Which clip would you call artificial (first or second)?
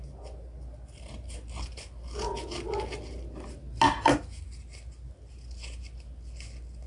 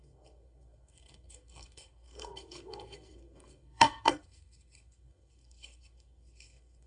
second